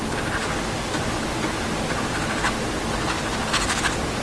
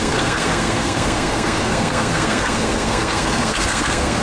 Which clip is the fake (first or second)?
second